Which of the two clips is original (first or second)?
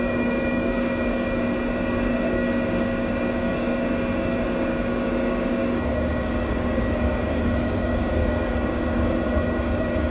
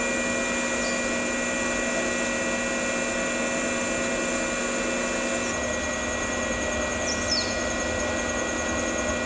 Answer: second